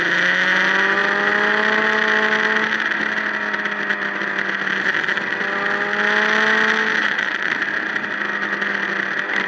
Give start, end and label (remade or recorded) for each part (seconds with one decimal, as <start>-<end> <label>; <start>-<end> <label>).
0.0-7.0 recorded; 7.0-7.5 remade; 7.5-9.5 recorded